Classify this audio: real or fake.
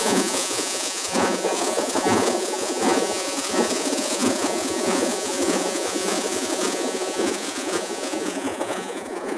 fake